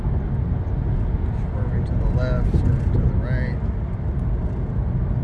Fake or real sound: real